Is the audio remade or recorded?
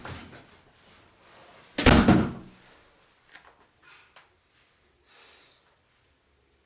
recorded